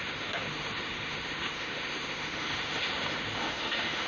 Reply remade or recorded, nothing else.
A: remade